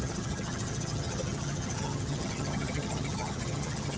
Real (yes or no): no